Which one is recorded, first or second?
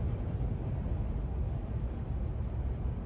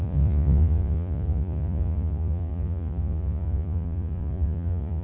first